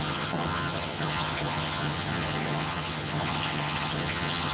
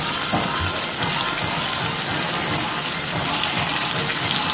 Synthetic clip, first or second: first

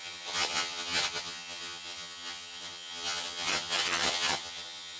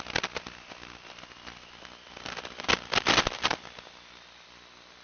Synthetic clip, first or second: first